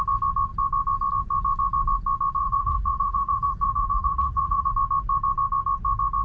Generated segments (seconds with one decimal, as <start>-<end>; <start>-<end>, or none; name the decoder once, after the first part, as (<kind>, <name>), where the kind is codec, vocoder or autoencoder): 2.4-4.7 (vocoder, Vocos)